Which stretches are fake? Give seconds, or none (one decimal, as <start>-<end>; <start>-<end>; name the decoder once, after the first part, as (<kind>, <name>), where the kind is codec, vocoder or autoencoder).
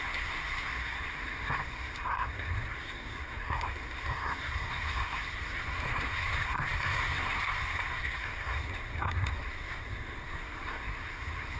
0.0-11.6 (codec, SNAC)